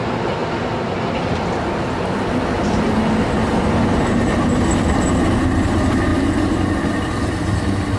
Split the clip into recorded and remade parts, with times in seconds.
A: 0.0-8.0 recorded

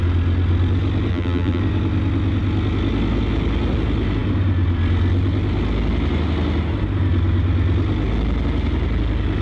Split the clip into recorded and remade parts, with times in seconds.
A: 0.0-1.1 recorded; 1.1-1.6 remade; 1.6-9.4 recorded

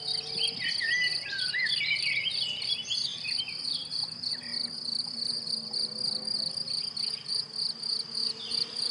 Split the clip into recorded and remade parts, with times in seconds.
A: 0.0-3.1 recorded; 3.1-4.3 remade; 4.3-4.9 recorded; 4.9-5.5 remade; 5.5-8.2 recorded; 8.2-8.9 remade

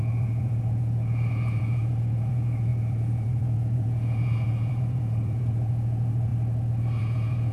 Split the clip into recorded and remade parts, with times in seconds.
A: 0.0-6.3 remade; 6.3-7.0 recorded; 7.0-7.5 remade

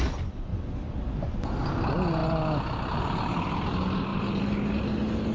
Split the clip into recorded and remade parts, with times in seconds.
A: 0.0-5.3 recorded

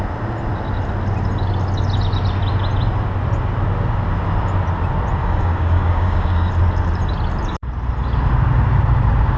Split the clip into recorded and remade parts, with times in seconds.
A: 0.0-5.2 recorded; 5.2-6.5 remade; 6.5-9.4 recorded

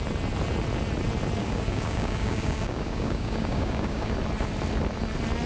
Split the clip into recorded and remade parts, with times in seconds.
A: 0.0-1.4 recorded; 1.4-4.1 remade; 4.1-5.5 recorded

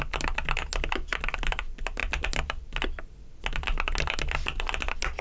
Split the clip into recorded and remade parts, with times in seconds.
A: 0.0-5.2 recorded